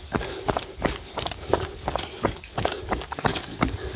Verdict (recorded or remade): remade